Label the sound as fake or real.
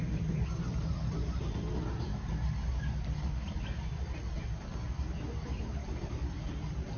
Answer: real